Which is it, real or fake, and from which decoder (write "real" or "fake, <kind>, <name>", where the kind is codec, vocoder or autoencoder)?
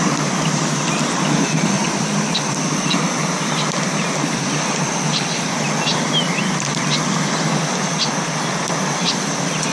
fake, vocoder, BigVGAN v2